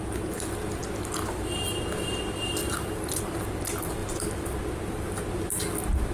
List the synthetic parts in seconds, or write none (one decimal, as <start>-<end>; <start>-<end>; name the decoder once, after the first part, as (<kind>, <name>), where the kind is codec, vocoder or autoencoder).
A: 2.6-3.2 (vocoder, BigVGAN v2)